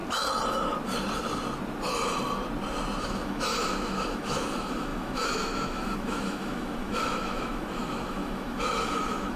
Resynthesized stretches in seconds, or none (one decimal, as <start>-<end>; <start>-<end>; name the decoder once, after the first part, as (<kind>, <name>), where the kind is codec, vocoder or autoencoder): 3.0-9.4 (autoencoder, DAC-VAE)